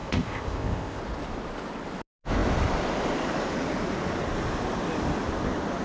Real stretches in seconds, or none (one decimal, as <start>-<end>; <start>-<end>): 1.0-5.8